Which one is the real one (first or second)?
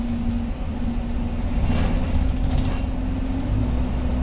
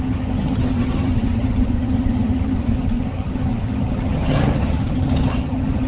first